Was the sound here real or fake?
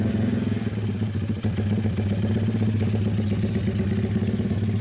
real